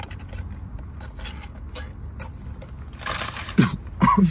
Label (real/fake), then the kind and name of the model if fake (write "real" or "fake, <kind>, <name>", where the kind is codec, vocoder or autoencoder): real